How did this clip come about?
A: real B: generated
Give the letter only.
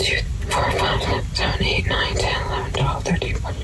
A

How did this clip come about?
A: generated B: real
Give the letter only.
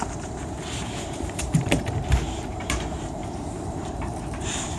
A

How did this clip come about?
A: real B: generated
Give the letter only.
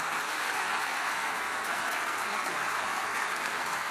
B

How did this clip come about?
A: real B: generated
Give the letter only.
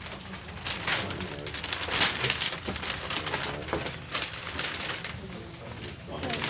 A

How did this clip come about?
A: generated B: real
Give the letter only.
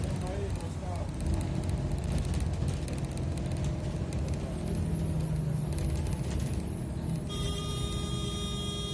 B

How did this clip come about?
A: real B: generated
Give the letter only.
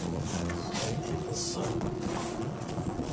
B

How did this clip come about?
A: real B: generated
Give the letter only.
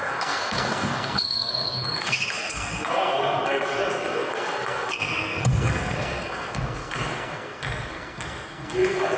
B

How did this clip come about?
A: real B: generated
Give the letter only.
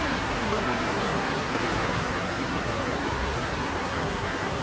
B